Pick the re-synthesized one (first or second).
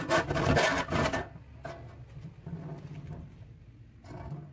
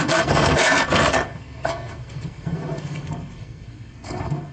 second